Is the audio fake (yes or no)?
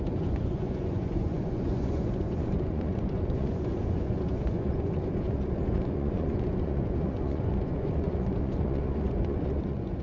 yes